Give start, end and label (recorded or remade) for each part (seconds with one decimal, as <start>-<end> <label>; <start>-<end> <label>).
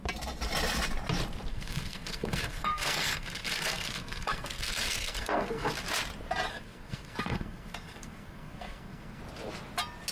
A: 0.0-1.5 recorded; 1.5-5.7 remade; 5.7-6.5 recorded; 6.5-9.2 remade; 9.2-10.1 recorded